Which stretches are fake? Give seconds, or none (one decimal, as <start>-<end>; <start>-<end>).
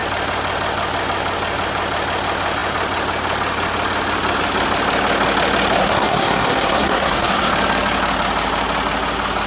5.8-7.5